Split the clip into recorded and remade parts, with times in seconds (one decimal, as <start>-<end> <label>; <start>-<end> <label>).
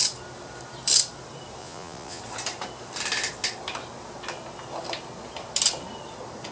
0.0-1.6 recorded; 1.6-2.2 remade; 2.2-6.5 recorded